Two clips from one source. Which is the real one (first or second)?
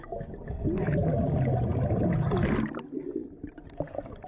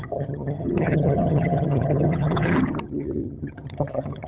first